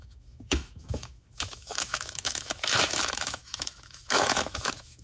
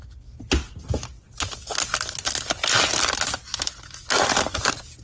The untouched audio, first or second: second